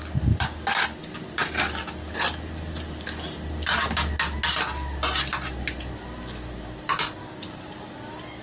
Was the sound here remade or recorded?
recorded